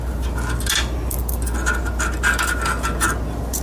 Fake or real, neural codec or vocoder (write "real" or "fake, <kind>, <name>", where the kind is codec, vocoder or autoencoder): real